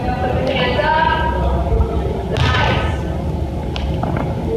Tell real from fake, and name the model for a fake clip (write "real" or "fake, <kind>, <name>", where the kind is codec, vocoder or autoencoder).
real